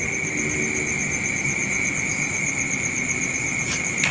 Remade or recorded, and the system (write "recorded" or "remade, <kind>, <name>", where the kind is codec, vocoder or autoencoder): recorded